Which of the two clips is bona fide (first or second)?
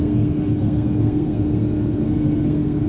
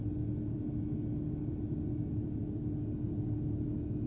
second